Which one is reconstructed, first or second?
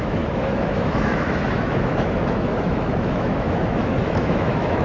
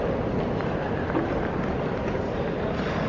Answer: first